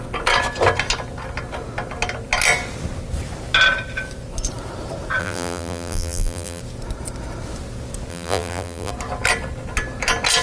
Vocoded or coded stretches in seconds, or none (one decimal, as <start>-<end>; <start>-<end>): 5.2-6.6; 8.1-8.9